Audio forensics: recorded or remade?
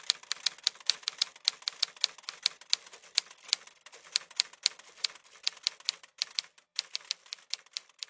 recorded